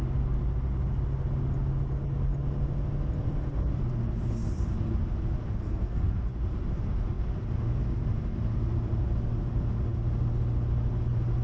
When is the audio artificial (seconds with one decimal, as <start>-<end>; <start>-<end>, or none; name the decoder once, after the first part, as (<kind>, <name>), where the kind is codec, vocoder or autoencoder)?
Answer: 5.6-6.1 (codec, SNAC)